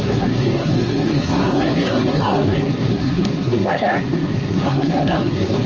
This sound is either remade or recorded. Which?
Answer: remade